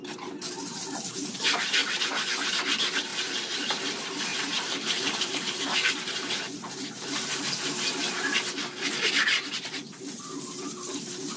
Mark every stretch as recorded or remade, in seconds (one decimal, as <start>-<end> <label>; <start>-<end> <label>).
0.0-3.1 recorded; 3.1-3.8 remade; 3.8-4.3 recorded; 4.3-7.4 remade; 7.4-11.4 recorded